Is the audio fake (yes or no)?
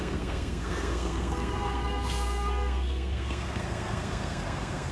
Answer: yes